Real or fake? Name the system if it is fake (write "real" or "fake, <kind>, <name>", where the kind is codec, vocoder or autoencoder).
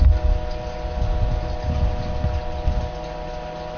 real